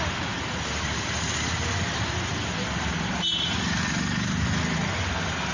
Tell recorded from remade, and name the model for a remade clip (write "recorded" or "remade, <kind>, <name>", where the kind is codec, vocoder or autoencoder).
recorded